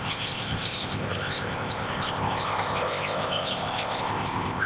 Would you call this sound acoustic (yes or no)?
no